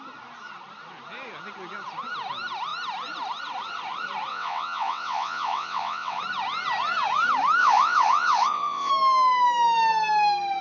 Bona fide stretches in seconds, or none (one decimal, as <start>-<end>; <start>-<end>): 0.0-4.3; 6.2-7.6; 8.9-10.6

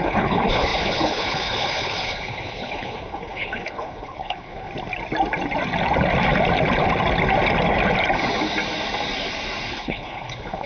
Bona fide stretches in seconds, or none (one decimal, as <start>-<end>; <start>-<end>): 4.7-9.7

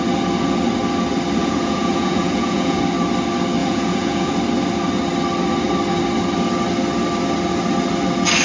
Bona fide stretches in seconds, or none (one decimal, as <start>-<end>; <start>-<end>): 0.0-1.4; 2.8-3.6; 4.3-8.4

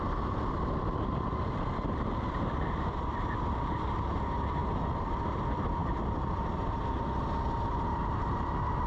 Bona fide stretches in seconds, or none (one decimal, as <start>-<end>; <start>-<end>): 0.0-8.9

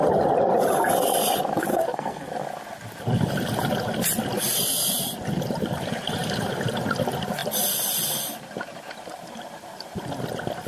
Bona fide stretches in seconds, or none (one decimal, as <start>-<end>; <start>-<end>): 0.0-1.7; 2.3-10.7